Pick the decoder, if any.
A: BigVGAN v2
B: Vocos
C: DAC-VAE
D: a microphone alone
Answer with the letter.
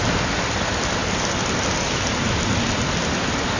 D